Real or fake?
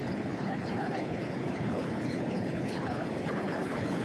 fake